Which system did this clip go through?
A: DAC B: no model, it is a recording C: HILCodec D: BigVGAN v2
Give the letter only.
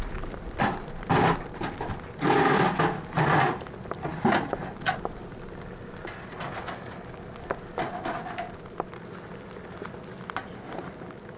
B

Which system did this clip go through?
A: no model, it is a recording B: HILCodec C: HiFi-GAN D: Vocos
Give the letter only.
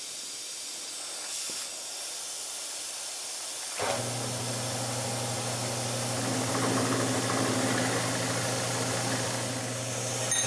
A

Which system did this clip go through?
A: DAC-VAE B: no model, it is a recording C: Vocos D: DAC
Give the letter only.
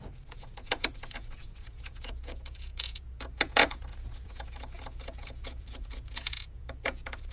C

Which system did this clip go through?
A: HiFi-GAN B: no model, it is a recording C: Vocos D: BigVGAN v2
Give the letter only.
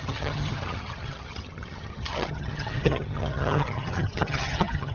A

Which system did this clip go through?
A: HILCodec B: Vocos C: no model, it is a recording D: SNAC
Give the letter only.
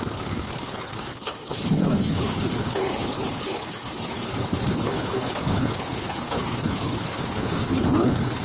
A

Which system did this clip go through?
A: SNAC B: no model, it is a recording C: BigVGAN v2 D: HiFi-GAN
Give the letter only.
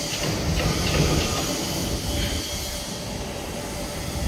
B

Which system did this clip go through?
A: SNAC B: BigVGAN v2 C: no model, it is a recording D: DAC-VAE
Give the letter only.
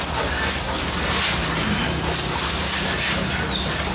C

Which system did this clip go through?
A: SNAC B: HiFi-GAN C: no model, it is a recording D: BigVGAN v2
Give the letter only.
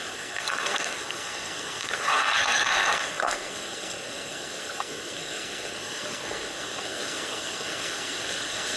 A